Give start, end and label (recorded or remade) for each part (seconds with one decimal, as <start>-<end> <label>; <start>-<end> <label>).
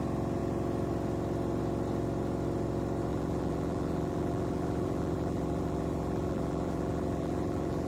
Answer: 0.0-3.1 recorded; 3.1-7.9 remade